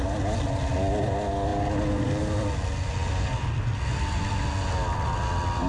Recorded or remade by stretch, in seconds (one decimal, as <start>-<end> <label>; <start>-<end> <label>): 0.0-5.7 recorded